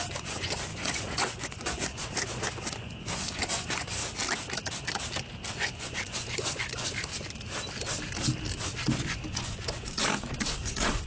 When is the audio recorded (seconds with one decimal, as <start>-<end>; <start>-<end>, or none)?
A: 4.0-5.5; 7.1-8.6